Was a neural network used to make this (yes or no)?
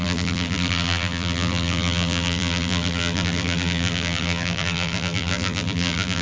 yes